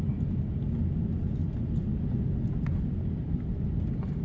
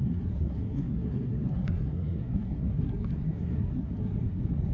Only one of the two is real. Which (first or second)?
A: first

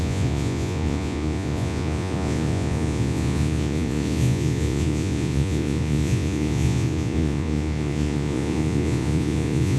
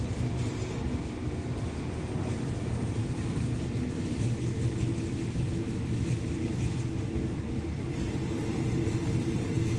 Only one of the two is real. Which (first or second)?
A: second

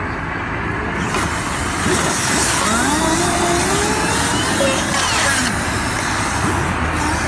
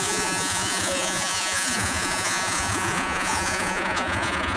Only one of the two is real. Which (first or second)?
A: first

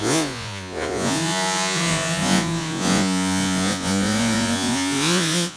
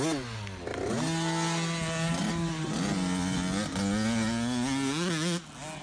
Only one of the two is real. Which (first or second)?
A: second